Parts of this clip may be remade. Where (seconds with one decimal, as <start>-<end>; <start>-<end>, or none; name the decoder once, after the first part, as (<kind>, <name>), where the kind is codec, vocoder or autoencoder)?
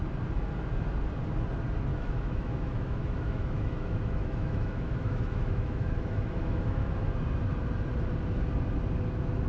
1.9-7.2 (autoencoder, DAC-VAE)